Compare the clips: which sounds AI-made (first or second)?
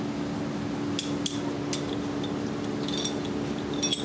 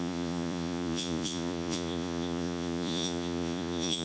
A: second